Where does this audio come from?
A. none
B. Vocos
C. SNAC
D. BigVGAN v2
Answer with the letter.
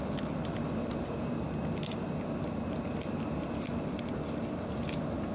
A